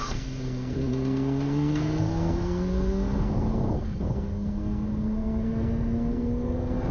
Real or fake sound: fake